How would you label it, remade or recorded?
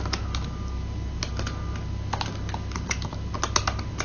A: recorded